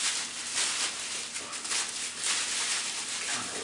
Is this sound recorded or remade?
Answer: recorded